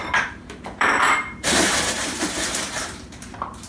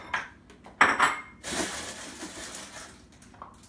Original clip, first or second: second